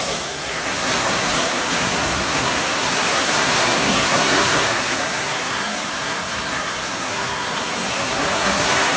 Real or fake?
fake